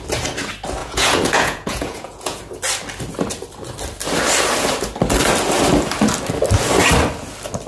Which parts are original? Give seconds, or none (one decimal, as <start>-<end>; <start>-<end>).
0.0-0.8; 2.4-7.7